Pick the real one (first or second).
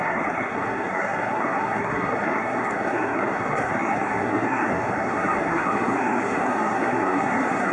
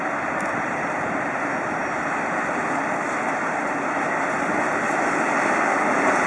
second